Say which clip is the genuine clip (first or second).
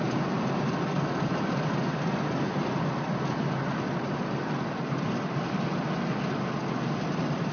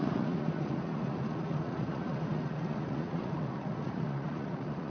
first